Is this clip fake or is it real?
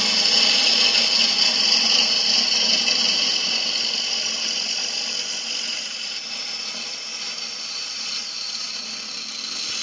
real